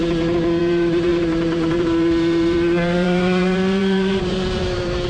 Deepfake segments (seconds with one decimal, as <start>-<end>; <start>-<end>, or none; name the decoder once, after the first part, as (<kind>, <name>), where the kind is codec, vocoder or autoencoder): 0.6-5.1 (vocoder, BigVGAN v2)

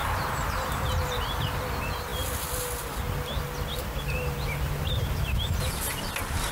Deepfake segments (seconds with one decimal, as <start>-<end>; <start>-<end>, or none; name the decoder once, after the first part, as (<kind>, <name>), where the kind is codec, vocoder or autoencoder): 0.0-1.2 (vocoder, BigVGAN v2)

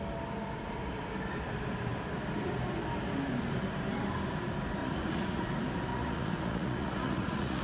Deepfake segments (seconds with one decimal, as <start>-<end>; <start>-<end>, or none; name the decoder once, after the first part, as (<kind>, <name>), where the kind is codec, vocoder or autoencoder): 4.8-5.5 (vocoder, Vocos); 5.9-7.6

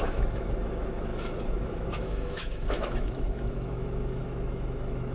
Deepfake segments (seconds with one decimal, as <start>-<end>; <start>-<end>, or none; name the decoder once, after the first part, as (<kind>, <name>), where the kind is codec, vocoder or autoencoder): 0.0-5.1 (autoencoder, DAC-VAE)

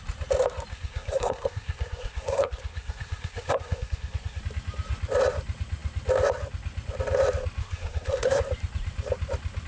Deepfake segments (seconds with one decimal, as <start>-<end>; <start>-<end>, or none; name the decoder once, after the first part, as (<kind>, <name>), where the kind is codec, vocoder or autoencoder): 0.7-4.4 (codec, SNAC); 7.6-8.4

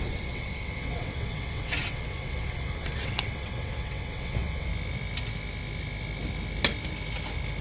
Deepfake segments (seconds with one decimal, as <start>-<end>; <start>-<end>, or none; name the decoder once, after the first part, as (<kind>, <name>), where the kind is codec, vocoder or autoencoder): 0.0-4.7 (vocoder, WaveNeXt)